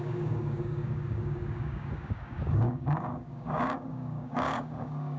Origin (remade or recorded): remade